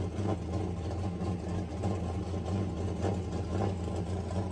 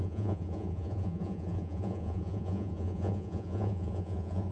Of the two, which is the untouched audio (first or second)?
first